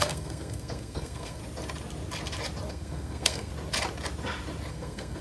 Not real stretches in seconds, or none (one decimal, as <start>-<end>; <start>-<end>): 0.0-1.4; 2.7-3.5; 4.7-5.2